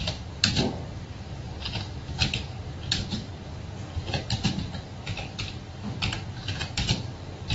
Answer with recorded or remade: remade